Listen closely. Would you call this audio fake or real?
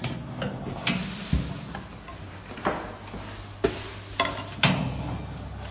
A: real